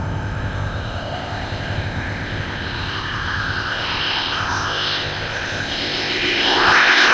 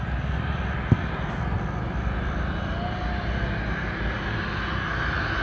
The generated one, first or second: first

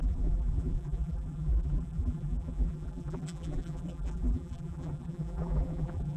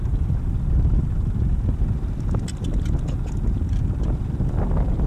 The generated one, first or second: first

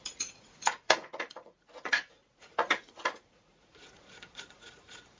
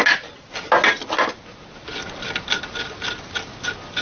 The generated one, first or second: first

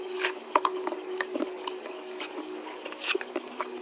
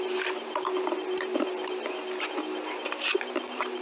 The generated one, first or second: first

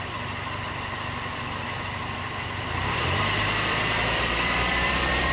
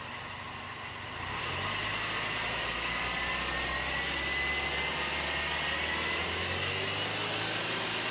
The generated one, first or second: first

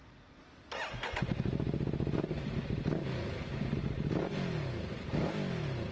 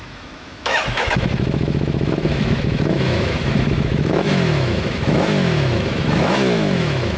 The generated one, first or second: second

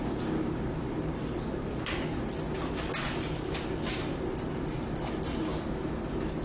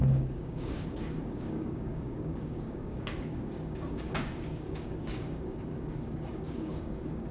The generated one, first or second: second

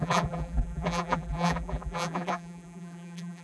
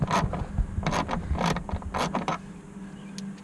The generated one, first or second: first